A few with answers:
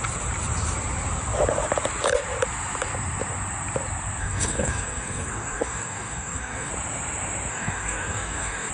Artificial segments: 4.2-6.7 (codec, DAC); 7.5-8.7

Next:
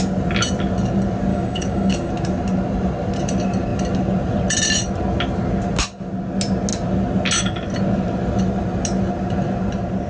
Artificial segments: 1.3-2.1 (codec, DAC)

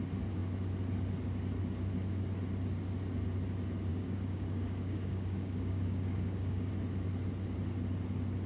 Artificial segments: 3.9-6.7 (codec, DAC)